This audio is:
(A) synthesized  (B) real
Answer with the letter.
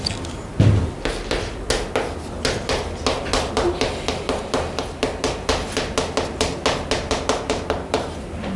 B